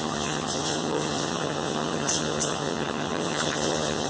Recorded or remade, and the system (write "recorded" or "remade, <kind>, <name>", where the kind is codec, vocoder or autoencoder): remade, vocoder, HiFi-GAN